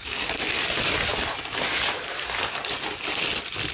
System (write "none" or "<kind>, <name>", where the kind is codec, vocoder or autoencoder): none